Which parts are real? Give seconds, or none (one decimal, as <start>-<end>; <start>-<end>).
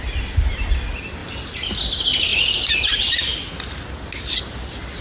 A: 0.0-2.3; 4.4-5.0